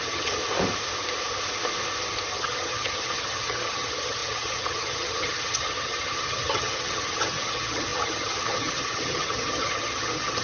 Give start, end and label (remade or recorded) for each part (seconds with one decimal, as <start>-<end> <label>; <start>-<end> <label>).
0.0-0.4 remade; 0.4-2.3 recorded; 2.3-10.4 remade